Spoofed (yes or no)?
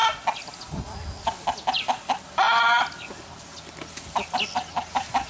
no